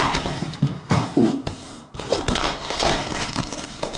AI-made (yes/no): yes